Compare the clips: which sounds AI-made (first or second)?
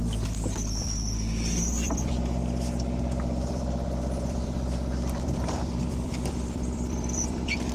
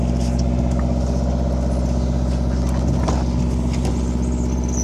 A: first